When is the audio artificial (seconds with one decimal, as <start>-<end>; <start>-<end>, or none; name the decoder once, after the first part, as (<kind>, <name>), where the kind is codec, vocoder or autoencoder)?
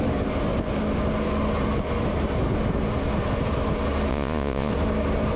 4.1-4.7 (vocoder, Vocos)